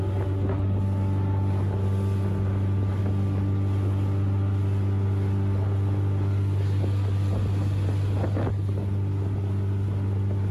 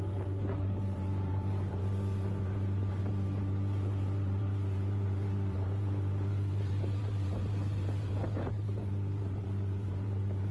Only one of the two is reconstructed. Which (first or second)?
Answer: second